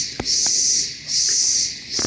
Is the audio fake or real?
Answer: real